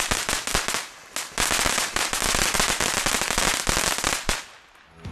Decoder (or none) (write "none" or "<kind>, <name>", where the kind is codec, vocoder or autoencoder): none